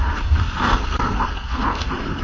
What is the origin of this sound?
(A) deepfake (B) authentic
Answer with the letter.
A